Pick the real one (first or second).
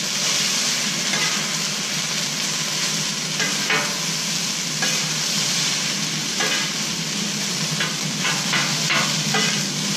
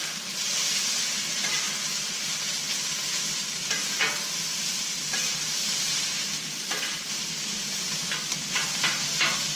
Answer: first